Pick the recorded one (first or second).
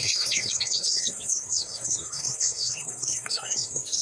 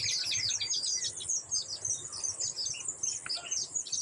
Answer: second